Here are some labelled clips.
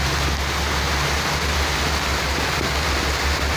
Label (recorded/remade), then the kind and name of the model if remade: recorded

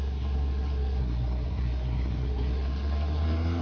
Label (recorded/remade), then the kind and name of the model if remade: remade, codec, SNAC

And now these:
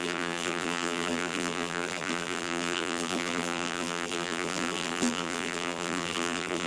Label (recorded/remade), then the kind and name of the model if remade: remade, vocoder, BigVGAN v2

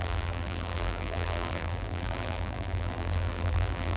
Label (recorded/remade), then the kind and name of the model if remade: remade, vocoder, BigVGAN v2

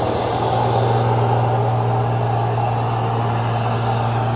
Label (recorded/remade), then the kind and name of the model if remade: recorded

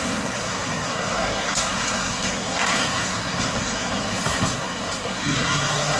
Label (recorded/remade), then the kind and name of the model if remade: remade, codec, SNAC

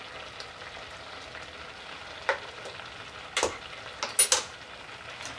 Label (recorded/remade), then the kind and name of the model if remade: recorded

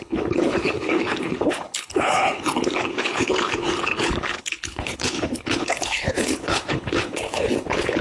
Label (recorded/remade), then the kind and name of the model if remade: remade, codec, HILCodec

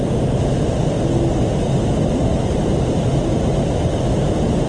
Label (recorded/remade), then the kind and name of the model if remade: recorded